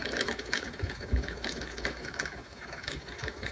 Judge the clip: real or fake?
fake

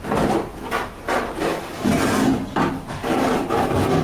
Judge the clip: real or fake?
real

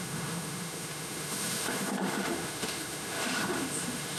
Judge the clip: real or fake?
fake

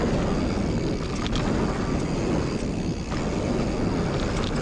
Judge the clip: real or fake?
real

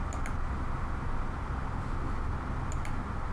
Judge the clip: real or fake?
real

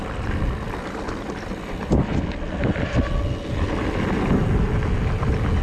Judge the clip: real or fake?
real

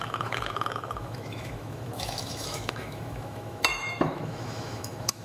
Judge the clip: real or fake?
fake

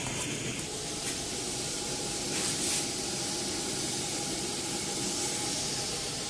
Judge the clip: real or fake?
real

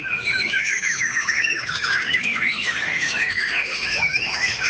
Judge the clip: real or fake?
fake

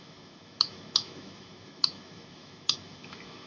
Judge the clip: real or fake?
fake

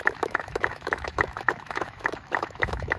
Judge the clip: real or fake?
fake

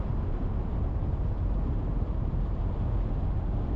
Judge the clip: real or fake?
real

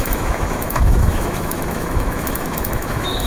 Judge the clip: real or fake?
fake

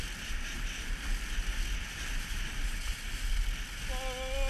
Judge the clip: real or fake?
real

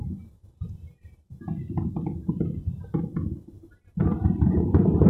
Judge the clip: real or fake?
real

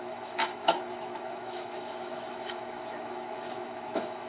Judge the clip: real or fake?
fake